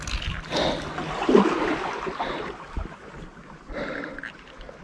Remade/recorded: recorded